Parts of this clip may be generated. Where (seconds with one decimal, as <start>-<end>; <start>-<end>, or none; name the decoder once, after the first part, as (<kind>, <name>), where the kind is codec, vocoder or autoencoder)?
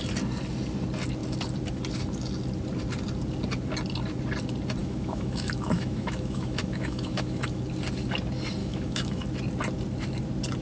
4.8-7.6 (autoencoder, DAC-VAE); 8.6-9.3